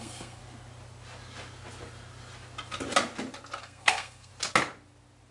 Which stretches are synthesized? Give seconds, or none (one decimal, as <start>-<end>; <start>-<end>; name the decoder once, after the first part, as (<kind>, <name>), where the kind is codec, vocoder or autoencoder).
0.0-0.4 (codec, SNAC); 3.6-4.3